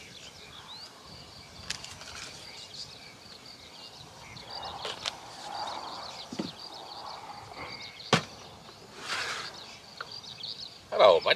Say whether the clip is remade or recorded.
recorded